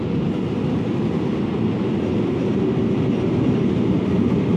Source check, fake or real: real